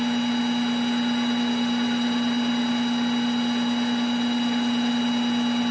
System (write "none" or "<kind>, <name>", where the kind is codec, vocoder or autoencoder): none